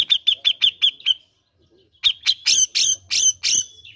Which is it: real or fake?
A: real